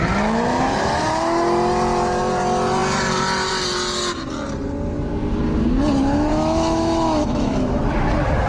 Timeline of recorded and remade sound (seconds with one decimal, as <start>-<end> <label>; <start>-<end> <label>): 0.0-6.3 recorded; 6.3-7.8 remade; 7.8-8.5 recorded